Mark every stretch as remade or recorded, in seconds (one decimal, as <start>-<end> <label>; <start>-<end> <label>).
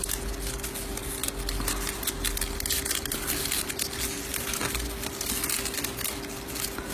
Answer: 0.0-6.9 recorded